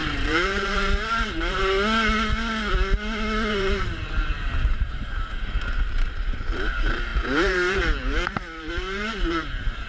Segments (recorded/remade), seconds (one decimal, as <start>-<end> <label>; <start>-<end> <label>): 0.0-1.6 remade; 1.6-3.5 recorded; 3.5-9.9 remade